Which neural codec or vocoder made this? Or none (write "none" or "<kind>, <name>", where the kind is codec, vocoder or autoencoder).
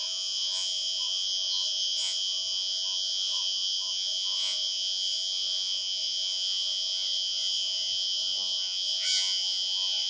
vocoder, Vocos